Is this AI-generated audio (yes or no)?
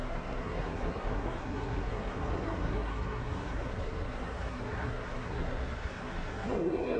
yes